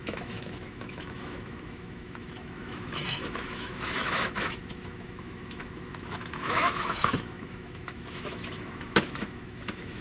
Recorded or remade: remade